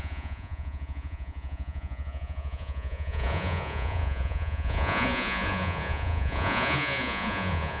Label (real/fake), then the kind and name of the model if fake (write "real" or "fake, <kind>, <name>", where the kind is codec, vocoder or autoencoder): fake, vocoder, Vocos